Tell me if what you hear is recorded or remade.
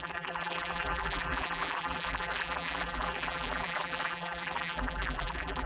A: remade